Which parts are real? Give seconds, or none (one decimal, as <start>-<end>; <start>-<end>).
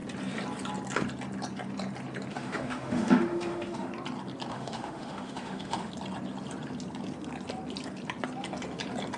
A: 0.0-2.3; 3.9-4.5; 5.9-9.2